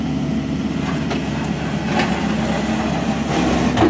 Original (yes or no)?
yes